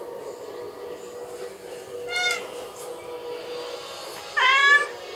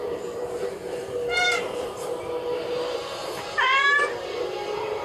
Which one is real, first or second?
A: first